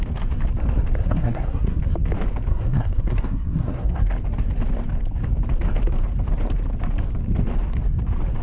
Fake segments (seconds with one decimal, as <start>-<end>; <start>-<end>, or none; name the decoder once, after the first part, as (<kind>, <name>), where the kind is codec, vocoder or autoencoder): 1.0-1.8 (codec, SNAC); 2.5-4.0